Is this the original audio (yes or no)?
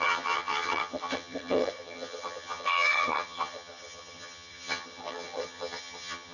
no